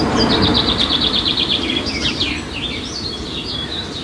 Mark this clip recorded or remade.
remade